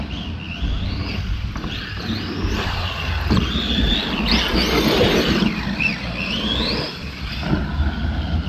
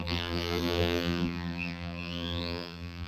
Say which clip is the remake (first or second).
second